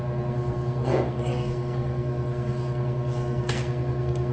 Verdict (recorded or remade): remade